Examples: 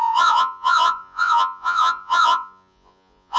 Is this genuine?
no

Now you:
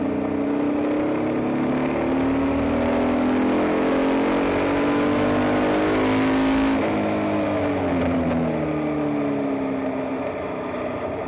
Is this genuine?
yes